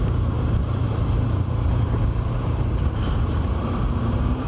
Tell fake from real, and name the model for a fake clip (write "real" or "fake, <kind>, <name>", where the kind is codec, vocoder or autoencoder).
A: fake, vocoder, BigVGAN v2